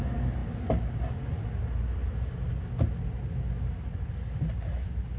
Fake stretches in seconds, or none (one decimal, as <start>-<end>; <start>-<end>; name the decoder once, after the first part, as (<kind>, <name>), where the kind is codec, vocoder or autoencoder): none